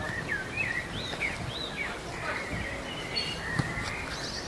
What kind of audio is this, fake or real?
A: real